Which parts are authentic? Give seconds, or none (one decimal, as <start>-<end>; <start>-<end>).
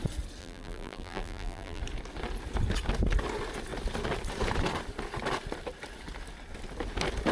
0.0-0.4; 1.8-7.3